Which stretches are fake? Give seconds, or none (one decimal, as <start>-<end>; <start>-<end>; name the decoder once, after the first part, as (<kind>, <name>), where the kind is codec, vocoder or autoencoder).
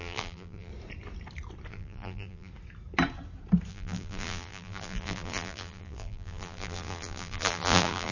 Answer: 0.0-0.7 (vocoder, BigVGAN v2); 1.7-2.5; 3.7-8.1